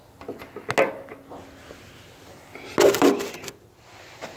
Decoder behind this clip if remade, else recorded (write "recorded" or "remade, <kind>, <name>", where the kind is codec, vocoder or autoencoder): recorded